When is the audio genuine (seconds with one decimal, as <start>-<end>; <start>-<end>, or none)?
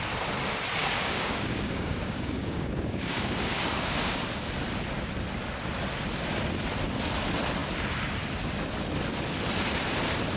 0.0-0.8; 4.2-10.4